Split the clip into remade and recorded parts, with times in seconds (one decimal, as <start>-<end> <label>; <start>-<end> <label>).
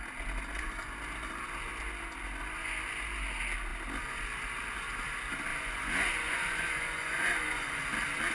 0.0-5.5 recorded; 5.5-7.8 remade; 7.8-8.3 recorded